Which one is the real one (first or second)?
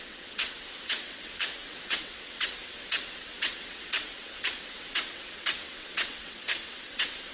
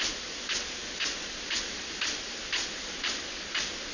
second